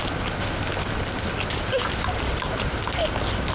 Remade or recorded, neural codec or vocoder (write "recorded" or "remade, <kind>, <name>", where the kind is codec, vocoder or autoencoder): recorded